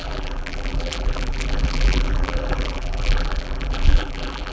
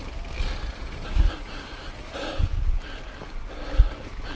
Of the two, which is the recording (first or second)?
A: second